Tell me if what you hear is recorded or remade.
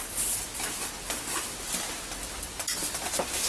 recorded